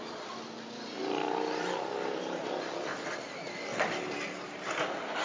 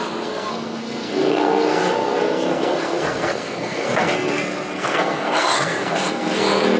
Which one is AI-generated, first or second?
second